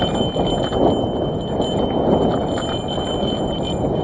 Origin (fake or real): real